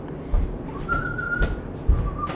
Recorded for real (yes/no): yes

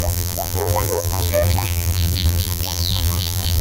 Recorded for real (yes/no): no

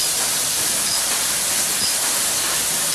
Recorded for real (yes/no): no